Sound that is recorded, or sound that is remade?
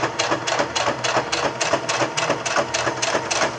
recorded